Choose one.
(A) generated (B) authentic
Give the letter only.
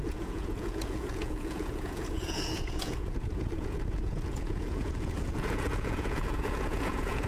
A